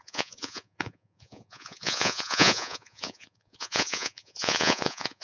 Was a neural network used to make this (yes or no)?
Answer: yes